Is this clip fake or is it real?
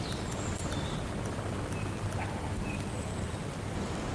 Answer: real